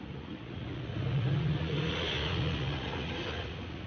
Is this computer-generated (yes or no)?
yes